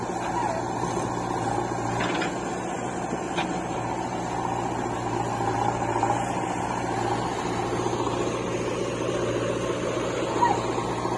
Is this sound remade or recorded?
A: recorded